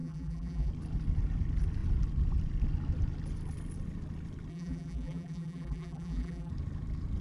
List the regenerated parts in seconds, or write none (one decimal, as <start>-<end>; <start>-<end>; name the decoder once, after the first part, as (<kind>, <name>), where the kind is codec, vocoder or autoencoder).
0.0-0.7 (vocoder, BigVGAN v2); 4.5-6.5